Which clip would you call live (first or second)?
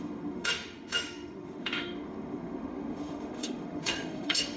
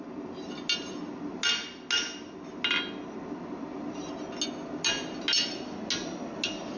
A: second